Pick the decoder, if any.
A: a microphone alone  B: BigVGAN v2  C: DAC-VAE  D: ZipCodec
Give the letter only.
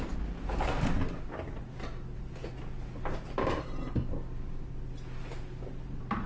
A